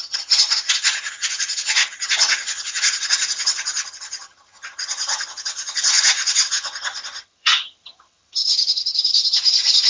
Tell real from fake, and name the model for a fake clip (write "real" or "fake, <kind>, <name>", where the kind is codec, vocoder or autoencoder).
fake, vocoder, HiFi-GAN